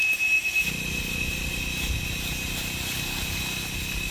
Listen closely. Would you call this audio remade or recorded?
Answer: recorded